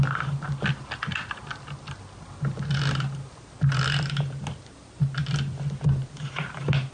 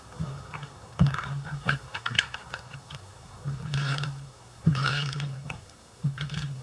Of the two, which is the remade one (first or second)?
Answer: second